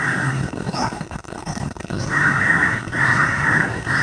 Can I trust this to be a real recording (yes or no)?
no